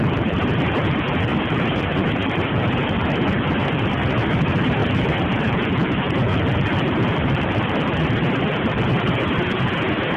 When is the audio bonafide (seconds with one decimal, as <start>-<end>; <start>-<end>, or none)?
0.0-4.8; 5.4-6.3; 9.1-10.2